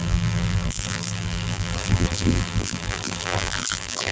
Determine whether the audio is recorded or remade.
remade